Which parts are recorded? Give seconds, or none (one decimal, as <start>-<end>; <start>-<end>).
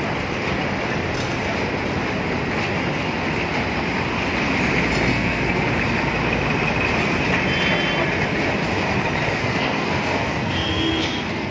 0.0-5.1; 5.7-9.4